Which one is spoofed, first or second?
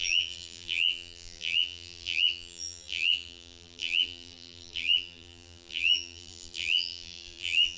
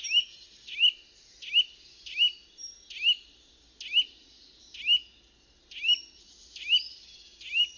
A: first